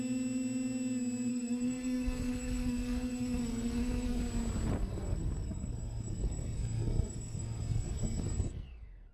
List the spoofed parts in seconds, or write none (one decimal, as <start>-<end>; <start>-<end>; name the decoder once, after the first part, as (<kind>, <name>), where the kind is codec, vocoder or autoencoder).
1.3-4.2 (codec, SNAC); 4.8-9.1